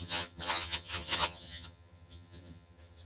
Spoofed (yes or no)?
yes